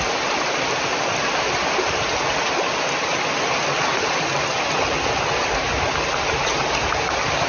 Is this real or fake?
real